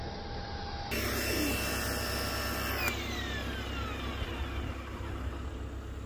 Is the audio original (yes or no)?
yes